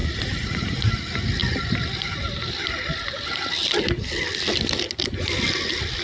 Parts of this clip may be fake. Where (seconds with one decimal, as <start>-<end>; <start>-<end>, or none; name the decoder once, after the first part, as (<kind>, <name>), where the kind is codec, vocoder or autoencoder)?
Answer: 0.0-0.9 (vocoder, Vocos)